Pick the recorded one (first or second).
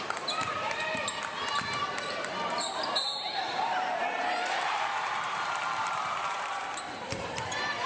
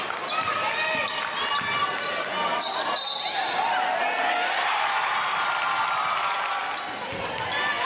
second